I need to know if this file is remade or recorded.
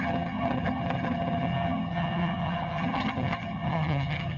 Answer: remade